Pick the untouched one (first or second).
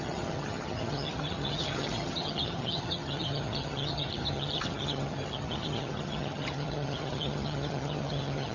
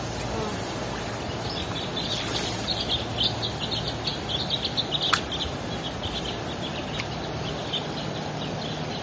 second